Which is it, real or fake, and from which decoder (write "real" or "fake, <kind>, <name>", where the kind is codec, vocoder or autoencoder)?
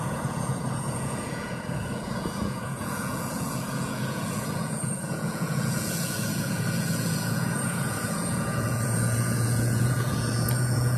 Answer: fake, vocoder, Vocos